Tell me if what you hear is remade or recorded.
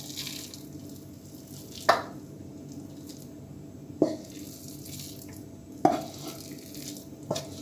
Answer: recorded